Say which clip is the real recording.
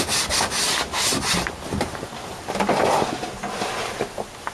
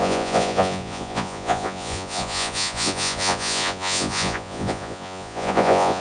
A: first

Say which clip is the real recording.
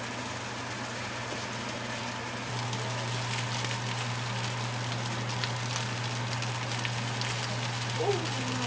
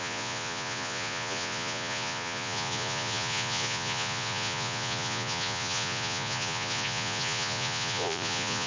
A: first